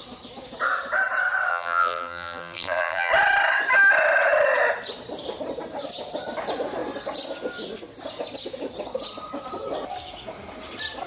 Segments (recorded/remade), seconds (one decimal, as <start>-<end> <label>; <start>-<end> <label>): 0.0-1.5 recorded; 1.5-3.1 remade; 3.1-11.1 recorded